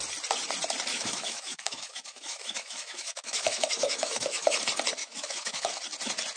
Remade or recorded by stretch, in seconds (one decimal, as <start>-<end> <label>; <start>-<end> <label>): 0.0-0.9 recorded; 0.9-4.6 remade; 4.6-5.0 recorded; 5.0-5.8 remade; 5.8-6.4 recorded